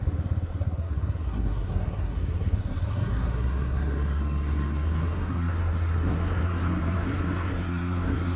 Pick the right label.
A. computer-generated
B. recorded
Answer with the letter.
A